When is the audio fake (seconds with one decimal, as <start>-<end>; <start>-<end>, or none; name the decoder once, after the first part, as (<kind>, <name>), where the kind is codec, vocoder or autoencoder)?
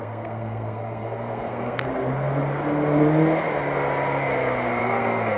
0.0-1.9 (codec, SNAC); 4.8-5.4